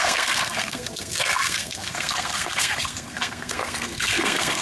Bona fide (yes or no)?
no